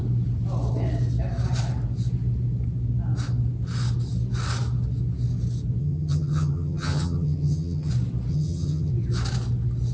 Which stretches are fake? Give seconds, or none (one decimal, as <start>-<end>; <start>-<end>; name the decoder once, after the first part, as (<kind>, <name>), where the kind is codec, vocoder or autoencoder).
5.8-7.9 (vocoder, HiFi-GAN); 8.3-8.9